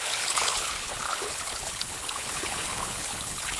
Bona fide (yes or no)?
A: no